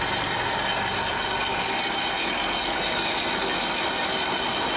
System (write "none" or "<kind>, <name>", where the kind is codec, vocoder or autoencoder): none